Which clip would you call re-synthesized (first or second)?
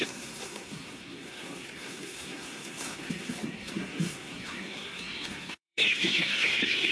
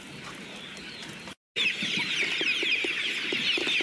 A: first